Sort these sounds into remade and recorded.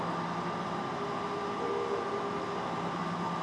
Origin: recorded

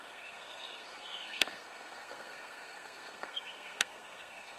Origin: remade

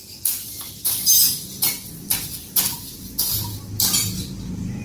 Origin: recorded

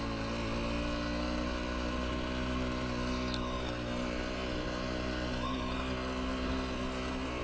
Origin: recorded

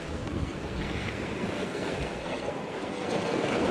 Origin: remade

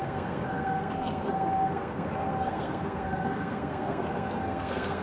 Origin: remade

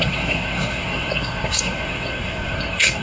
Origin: remade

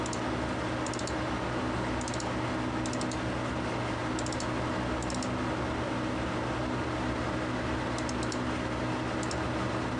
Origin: recorded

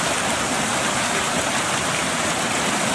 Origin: recorded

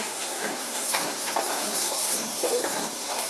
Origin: remade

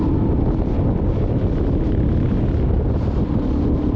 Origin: recorded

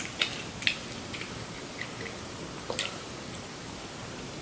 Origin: recorded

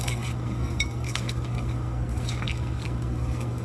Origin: remade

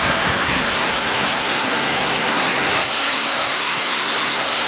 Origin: remade